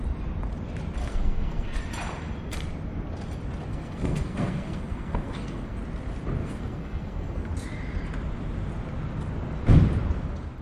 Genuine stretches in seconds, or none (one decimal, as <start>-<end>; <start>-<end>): 0.0-1.0; 1.8-3.7; 5.8-6.4; 7.5-10.6